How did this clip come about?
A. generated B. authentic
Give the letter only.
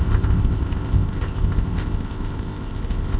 A